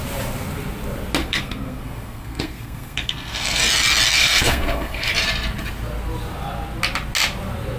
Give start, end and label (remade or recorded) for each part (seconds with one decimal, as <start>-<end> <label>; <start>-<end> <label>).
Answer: 0.0-1.2 recorded; 1.2-3.6 remade; 3.6-4.2 recorded; 4.2-5.1 remade; 5.1-7.8 recorded

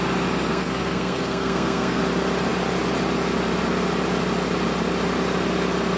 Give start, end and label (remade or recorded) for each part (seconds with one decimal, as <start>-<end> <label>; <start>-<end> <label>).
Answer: 0.0-0.5 recorded; 0.5-2.0 remade; 2.0-6.0 recorded